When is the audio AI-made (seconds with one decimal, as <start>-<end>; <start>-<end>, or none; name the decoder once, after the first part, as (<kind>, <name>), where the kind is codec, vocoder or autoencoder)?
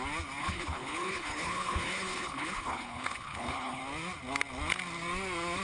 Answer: 0.4-3.8 (codec, HILCodec)